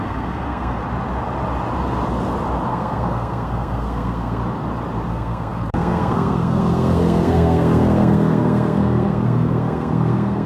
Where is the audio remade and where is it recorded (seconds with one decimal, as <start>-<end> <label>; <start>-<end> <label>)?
0.0-0.8 remade; 0.8-2.7 recorded; 2.7-4.4 remade; 4.4-5.1 recorded; 5.1-10.5 remade